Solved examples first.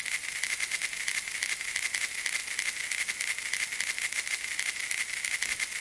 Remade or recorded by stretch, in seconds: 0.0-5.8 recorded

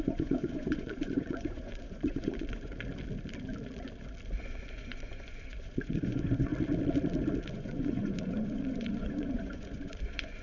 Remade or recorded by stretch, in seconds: 0.0-2.7 remade; 2.7-4.4 recorded; 4.4-6.5 remade; 6.5-7.5 recorded; 7.5-10.4 remade